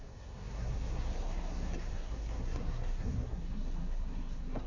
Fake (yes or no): yes